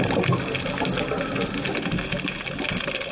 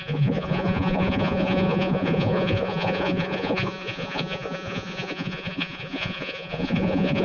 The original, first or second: first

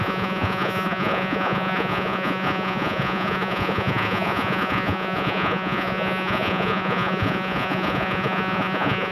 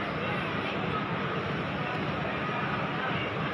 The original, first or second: second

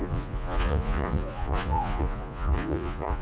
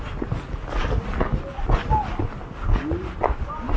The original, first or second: second